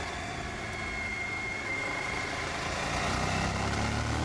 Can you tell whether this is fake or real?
real